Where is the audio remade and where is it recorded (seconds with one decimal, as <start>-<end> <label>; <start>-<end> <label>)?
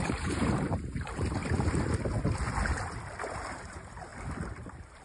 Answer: 0.0-1.4 remade; 1.4-3.5 recorded; 3.5-4.1 remade; 4.1-4.6 recorded; 4.6-5.0 remade